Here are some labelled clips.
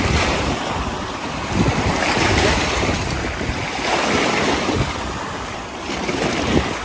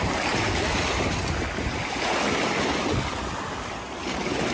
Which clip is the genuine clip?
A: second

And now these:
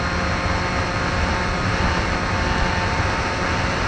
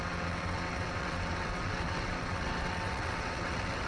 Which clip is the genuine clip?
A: first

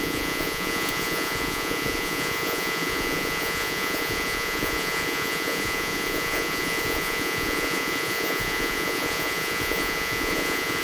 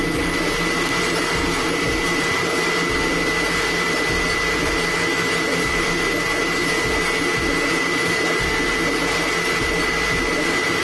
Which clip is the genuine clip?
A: second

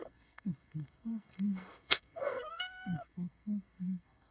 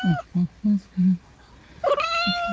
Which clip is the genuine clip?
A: second